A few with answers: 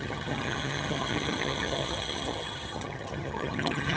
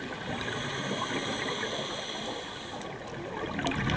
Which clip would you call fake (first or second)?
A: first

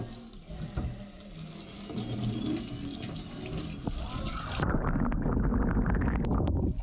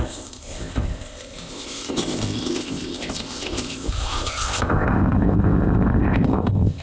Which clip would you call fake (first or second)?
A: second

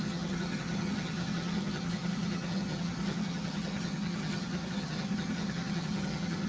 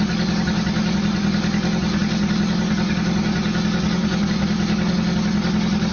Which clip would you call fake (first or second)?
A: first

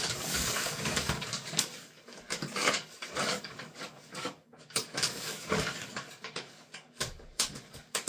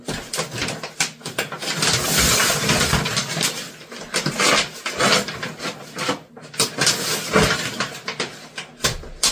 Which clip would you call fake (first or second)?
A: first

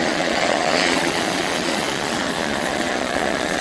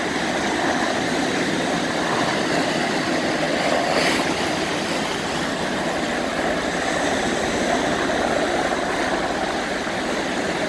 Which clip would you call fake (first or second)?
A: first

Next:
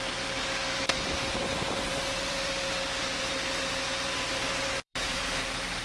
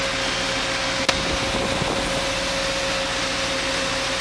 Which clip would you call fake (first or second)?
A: first